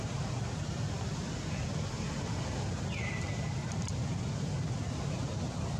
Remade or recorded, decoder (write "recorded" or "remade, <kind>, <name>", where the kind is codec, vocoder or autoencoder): remade, vocoder, BigVGAN v2